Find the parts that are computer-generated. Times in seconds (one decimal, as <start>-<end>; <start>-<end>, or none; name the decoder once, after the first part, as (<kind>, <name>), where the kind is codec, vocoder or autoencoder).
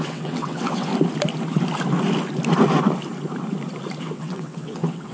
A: 0.0-0.9 (vocoder, WaveNeXt); 4.0-5.1